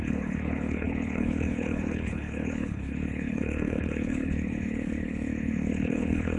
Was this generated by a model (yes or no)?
yes